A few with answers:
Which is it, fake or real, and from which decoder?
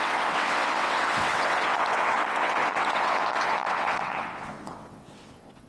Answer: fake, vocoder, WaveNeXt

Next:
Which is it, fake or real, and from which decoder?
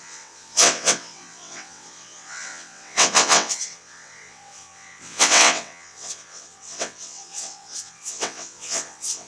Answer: fake, vocoder, WaveNeXt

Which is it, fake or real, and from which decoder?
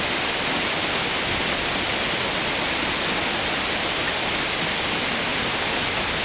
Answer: real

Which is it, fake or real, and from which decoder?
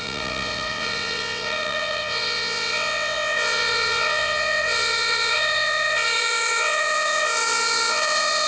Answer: fake, vocoder, WaveNeXt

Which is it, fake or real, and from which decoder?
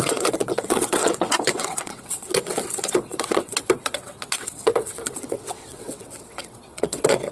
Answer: fake, vocoder, WaveNeXt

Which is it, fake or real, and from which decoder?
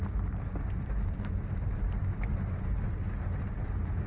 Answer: real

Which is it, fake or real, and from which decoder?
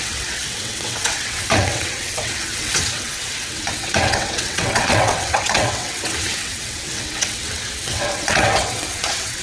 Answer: fake, vocoder, WaveNeXt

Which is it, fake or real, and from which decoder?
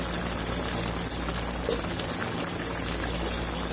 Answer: real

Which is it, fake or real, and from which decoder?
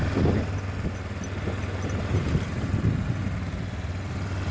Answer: real